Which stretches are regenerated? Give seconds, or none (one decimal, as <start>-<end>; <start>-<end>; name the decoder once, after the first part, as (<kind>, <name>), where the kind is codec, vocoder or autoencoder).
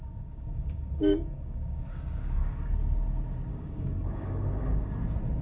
0.0-2.7 (codec, DAC); 3.5-4.9